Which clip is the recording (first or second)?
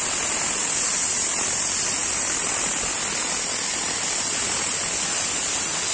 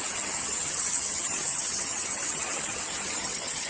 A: first